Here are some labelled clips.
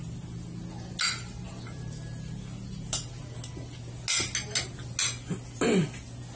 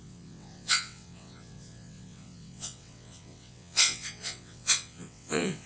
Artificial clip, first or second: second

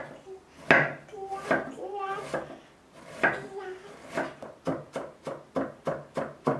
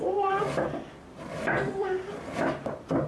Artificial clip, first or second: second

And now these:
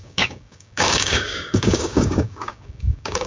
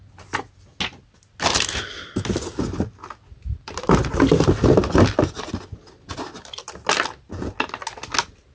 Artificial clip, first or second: first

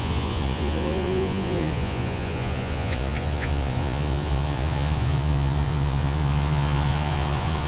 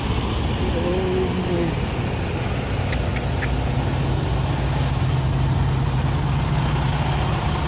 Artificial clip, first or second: first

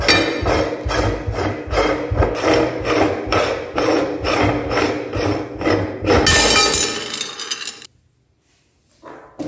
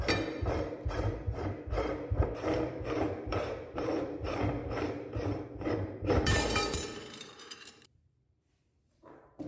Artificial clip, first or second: second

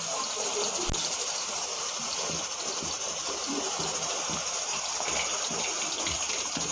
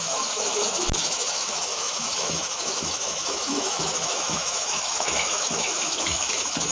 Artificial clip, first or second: second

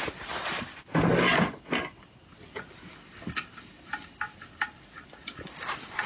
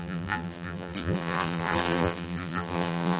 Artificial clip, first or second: second